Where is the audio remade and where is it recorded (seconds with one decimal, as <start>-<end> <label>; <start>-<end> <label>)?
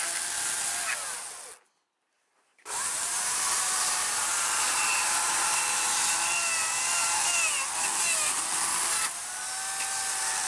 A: 0.0-2.5 recorded; 2.5-5.6 remade; 5.6-10.5 recorded